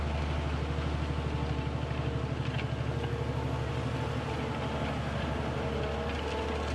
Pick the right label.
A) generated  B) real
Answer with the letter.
B